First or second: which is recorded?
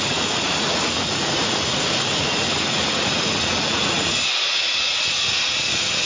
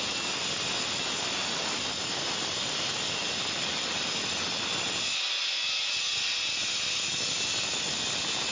second